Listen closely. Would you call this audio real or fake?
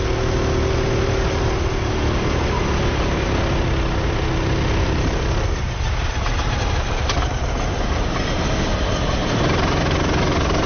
real